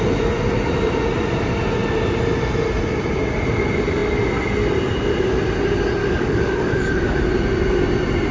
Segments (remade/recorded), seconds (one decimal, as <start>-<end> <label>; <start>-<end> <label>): 0.0-6.0 recorded; 6.0-7.2 remade; 7.2-8.3 recorded